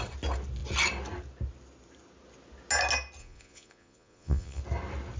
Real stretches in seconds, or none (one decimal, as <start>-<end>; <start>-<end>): 0.0-3.2; 4.6-5.2